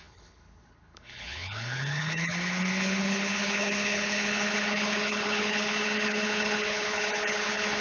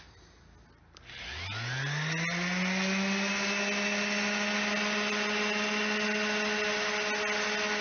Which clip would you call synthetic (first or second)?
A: first